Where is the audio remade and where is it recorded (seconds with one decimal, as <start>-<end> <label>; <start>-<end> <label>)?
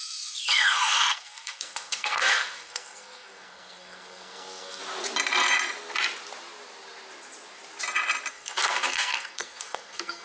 0.0-4.8 remade; 4.8-8.3 recorded; 8.3-10.2 remade